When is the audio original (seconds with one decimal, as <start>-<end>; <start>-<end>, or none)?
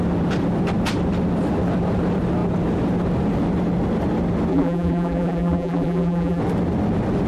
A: 0.0-4.5; 6.4-7.3